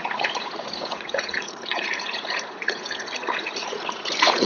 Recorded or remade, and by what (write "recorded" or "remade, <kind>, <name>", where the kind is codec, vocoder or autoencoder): remade, vocoder, Vocos